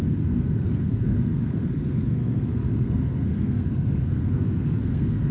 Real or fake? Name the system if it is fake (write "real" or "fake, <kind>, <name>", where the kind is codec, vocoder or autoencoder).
fake, codec, SNAC